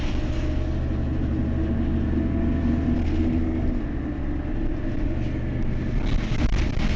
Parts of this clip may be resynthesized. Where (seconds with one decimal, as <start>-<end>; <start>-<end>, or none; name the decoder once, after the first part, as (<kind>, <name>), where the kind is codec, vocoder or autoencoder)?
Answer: 3.0-3.8 (codec, SNAC)